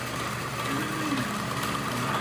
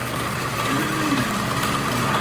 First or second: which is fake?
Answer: second